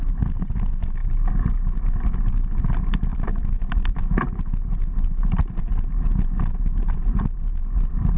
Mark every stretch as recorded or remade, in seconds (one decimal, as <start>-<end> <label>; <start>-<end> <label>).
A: 0.0-3.1 recorded; 3.1-3.7 remade; 3.7-8.2 recorded